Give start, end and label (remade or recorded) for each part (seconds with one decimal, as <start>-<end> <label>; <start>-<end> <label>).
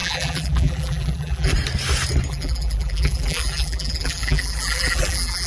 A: 0.0-1.5 remade; 1.5-2.3 recorded; 2.3-5.5 remade